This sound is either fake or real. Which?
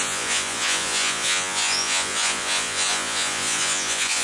fake